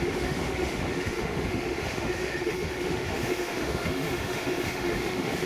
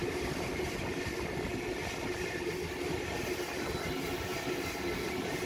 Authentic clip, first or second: second